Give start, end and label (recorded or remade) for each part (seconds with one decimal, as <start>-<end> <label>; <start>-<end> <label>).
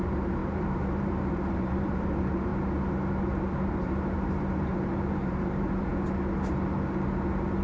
0.0-2.5 remade; 2.5-3.8 recorded; 3.8-5.9 remade; 5.9-7.6 recorded